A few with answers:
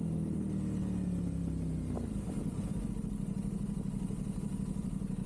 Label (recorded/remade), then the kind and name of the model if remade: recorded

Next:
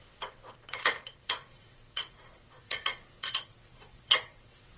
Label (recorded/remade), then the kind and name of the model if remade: remade, vocoder, WaveNeXt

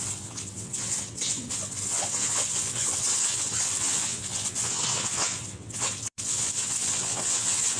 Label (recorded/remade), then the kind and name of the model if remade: remade, vocoder, WaveNeXt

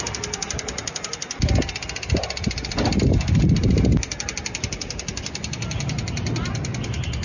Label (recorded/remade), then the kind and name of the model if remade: recorded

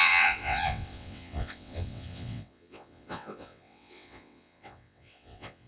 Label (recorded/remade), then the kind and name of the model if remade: remade, vocoder, WaveNeXt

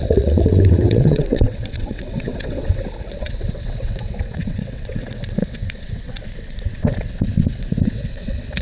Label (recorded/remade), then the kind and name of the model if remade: remade, vocoder, WaveNeXt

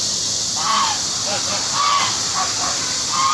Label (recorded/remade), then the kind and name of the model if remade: recorded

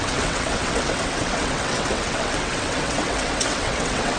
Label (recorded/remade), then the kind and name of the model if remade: remade, vocoder, WaveNeXt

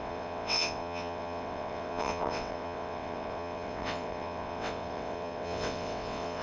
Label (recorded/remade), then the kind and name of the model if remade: remade, vocoder, WaveNeXt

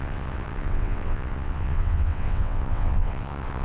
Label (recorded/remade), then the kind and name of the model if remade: remade, vocoder, WaveNeXt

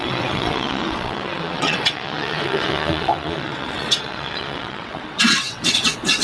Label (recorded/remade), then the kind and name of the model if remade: remade, vocoder, WaveNeXt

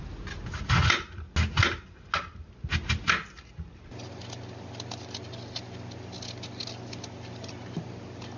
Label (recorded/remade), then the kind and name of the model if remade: recorded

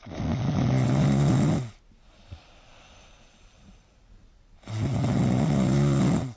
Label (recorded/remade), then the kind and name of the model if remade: recorded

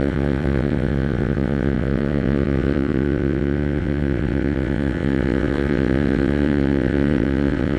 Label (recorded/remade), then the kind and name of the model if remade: remade, vocoder, WaveNeXt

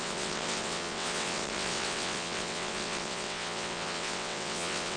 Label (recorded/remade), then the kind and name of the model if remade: remade, vocoder, WaveNeXt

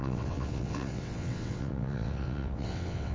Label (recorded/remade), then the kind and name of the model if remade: remade, vocoder, WaveNeXt